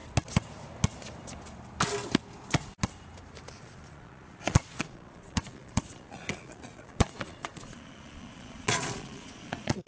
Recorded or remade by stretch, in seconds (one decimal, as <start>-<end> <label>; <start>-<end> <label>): 0.0-3.5 recorded; 3.5-9.9 remade